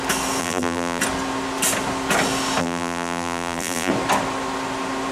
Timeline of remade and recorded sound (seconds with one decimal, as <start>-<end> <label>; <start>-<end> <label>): 0.0-0.4 recorded; 0.4-1.0 remade; 1.0-2.6 recorded; 2.6-3.9 remade; 3.9-5.1 recorded